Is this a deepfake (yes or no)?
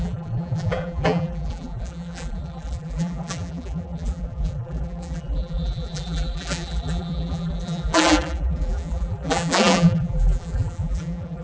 yes